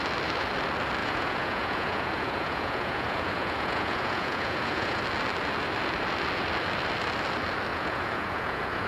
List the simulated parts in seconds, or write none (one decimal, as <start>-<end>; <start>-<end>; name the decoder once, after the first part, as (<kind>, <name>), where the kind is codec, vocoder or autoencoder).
1.0-5.0 (vocoder, Vocos); 7.7-8.9